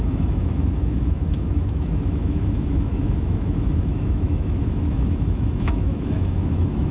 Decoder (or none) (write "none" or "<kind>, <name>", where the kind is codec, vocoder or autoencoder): autoencoder, DAC-VAE